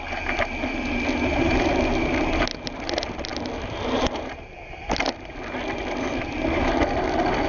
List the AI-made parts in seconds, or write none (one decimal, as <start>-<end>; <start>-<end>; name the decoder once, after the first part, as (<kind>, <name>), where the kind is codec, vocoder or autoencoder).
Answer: none